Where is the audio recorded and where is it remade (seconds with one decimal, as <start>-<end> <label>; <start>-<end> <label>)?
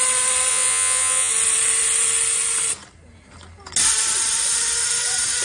0.0-0.5 recorded; 0.5-1.3 remade; 1.3-5.4 recorded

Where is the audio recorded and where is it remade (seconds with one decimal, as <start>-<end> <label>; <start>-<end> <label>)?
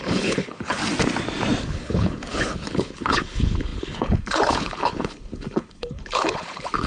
0.0-0.8 remade; 0.8-1.6 recorded; 1.6-6.9 remade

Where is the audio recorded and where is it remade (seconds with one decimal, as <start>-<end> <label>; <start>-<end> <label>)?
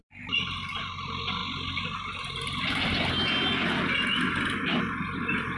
0.0-5.6 recorded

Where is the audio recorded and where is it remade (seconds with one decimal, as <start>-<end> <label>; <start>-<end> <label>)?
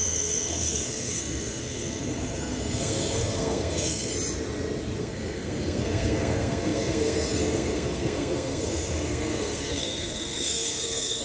0.0-4.1 remade; 4.1-5.0 recorded; 5.0-11.2 remade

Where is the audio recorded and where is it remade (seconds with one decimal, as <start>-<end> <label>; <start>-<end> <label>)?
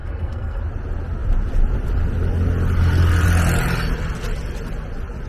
0.0-0.6 remade; 0.6-5.3 recorded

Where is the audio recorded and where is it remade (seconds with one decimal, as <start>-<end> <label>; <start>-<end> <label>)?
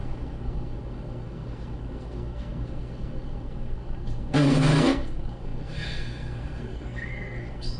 0.0-7.8 remade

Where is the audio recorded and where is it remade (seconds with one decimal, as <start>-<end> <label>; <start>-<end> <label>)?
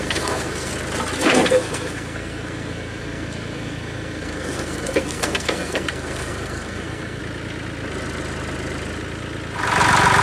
0.0-0.7 remade; 0.7-1.2 recorded; 1.2-7.2 remade; 7.2-10.2 recorded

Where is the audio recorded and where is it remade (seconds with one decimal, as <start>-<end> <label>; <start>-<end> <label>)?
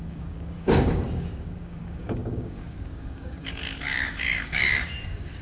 0.0-5.4 remade